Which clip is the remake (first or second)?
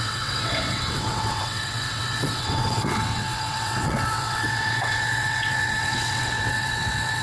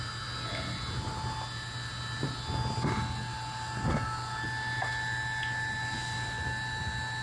first